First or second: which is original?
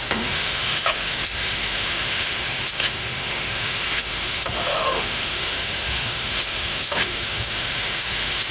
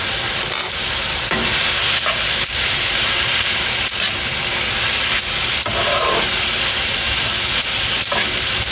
second